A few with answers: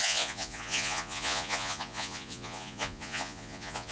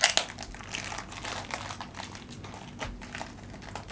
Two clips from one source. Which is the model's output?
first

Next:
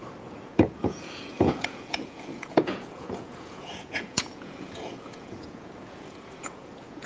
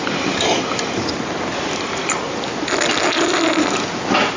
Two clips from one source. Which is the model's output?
first